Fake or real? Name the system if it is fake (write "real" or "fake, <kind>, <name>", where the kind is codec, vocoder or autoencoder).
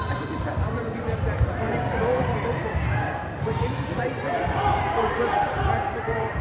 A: real